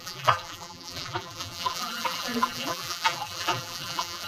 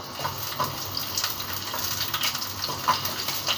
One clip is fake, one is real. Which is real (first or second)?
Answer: second